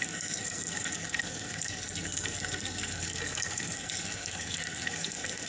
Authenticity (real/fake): fake